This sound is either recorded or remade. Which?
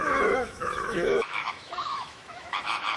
remade